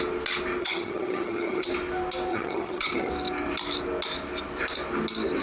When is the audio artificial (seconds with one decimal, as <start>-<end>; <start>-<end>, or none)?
0.6-1.7; 2.3-3.1